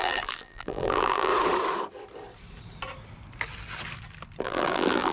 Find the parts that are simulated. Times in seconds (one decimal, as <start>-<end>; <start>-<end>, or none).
0.0-1.3; 4.4-5.1